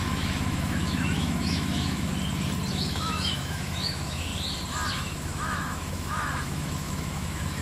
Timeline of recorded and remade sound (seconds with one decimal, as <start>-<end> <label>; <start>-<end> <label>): 0.0-2.1 remade; 2.1-2.7 recorded; 2.7-4.3 remade; 4.3-4.9 recorded; 4.9-7.6 remade